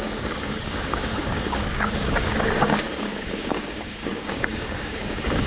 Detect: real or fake fake